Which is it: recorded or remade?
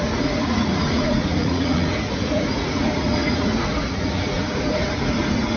remade